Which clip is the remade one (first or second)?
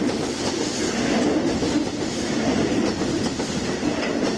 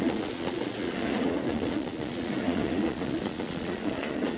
second